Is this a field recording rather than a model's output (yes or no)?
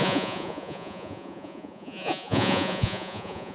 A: no